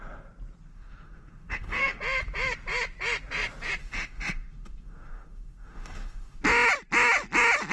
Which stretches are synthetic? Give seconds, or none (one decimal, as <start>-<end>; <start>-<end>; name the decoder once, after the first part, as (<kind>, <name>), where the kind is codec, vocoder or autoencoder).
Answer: 0.7-2.0 (autoencoder, DAC-VAE); 3.8-6.4